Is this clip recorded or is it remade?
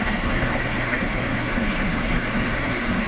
remade